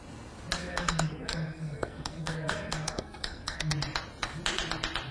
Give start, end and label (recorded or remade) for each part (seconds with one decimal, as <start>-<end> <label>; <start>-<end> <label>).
0.0-0.6 recorded; 0.6-3.7 remade; 3.7-5.1 recorded